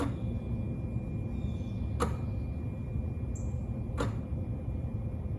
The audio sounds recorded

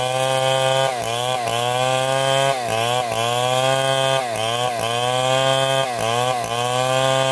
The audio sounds recorded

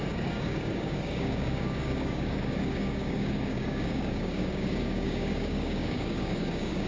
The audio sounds remade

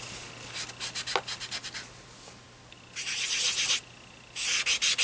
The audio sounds recorded